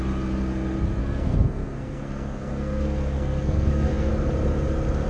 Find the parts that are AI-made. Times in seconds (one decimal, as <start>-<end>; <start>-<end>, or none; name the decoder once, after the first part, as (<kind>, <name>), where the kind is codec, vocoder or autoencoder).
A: 1.0-4.1 (codec, SNAC)